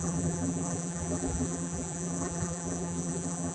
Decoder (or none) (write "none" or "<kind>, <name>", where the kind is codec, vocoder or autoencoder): vocoder, BigVGAN v2